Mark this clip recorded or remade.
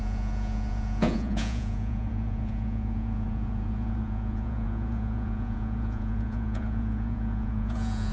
remade